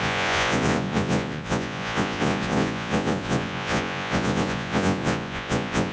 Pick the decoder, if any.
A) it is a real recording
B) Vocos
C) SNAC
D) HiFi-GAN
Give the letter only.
B